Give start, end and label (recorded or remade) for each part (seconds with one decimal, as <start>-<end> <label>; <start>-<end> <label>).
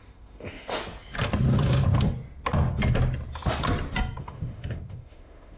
0.0-0.8 remade; 0.8-4.2 recorded; 4.2-5.6 remade